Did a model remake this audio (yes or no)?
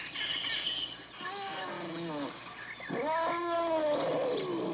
no